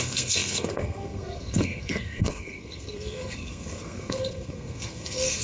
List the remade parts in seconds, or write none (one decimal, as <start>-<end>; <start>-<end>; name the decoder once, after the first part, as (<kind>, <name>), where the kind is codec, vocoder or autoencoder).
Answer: 0.0-5.4 (codec, SNAC)